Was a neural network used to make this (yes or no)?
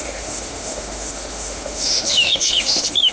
yes